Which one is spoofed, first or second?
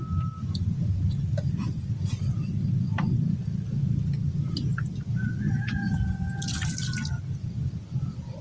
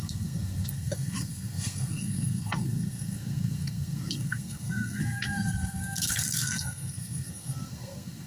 second